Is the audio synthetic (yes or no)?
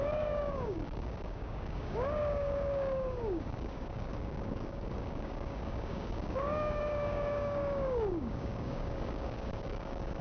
yes